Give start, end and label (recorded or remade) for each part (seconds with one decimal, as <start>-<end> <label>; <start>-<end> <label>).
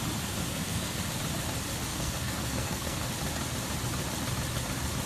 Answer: 0.0-0.5 recorded; 0.5-1.0 remade; 1.0-1.9 recorded; 1.9-3.1 remade; 3.1-5.1 recorded